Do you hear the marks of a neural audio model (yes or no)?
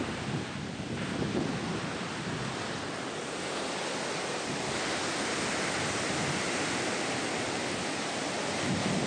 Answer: no